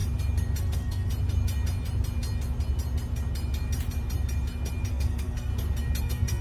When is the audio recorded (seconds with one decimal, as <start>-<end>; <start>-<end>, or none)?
0.0-0.6; 1.1-4.9; 5.5-6.0